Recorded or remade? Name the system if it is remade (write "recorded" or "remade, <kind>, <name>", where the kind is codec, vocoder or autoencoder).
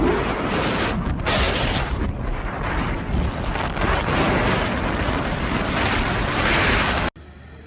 recorded